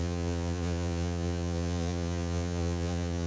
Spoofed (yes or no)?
yes